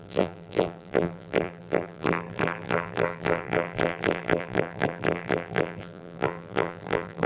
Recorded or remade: remade